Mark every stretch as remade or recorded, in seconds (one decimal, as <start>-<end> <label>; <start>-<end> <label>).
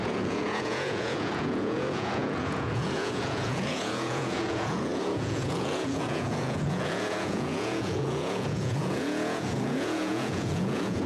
0.0-11.1 remade